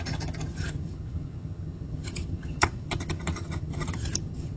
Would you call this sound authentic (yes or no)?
no